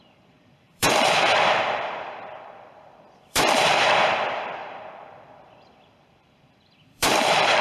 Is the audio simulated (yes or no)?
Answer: yes